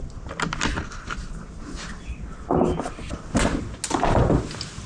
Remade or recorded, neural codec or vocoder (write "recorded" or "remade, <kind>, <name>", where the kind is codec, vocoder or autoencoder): recorded